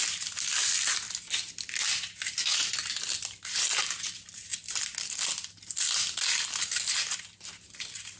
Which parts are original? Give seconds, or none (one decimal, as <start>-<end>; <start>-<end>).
0.0-8.2